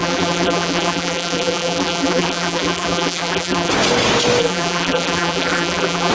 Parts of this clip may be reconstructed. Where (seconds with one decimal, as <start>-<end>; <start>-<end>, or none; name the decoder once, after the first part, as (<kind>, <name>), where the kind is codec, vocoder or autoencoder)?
0.0-3.7 (vocoder, BigVGAN v2); 4.4-6.1